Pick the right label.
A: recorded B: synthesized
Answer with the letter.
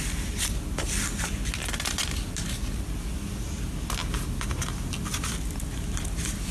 A